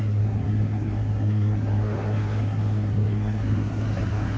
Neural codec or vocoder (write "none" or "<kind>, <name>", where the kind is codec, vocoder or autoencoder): codec, SNAC